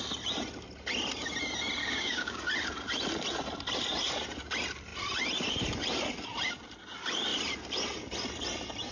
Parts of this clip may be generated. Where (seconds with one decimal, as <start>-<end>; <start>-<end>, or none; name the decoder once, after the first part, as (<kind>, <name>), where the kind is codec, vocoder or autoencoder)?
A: 1.8-2.4 (codec, DAC)